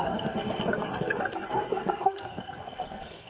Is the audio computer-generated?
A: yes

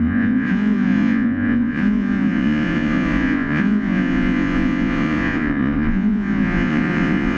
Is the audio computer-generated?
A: yes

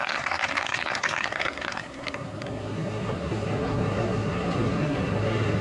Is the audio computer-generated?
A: yes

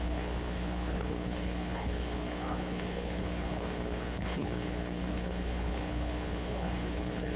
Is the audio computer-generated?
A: yes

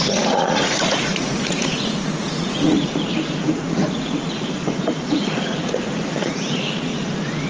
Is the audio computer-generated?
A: yes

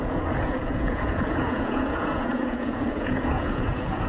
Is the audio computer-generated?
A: yes